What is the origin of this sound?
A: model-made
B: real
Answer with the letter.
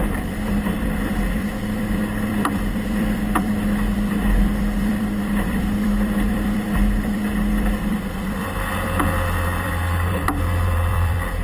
A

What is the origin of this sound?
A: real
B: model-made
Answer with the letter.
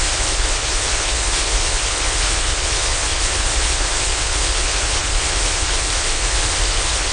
B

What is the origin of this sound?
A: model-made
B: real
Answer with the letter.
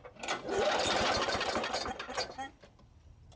B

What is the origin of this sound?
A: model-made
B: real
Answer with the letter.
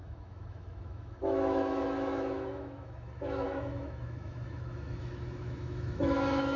A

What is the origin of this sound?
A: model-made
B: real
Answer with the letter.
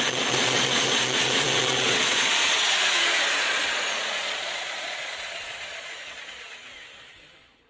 A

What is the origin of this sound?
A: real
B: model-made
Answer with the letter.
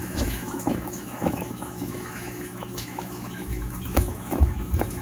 B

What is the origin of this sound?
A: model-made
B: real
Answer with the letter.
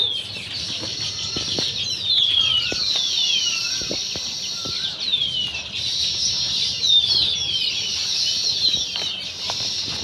B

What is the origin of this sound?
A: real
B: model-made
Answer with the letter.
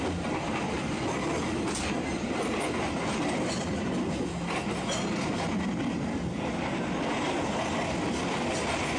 A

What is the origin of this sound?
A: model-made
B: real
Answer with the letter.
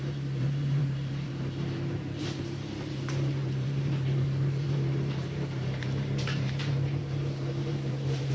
A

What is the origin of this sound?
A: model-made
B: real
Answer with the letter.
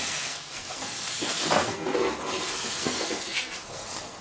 A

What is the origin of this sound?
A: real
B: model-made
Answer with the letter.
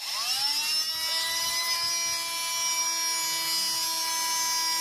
A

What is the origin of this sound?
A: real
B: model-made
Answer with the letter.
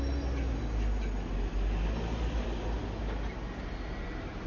A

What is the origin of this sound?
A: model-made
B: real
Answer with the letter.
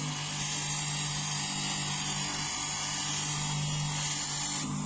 B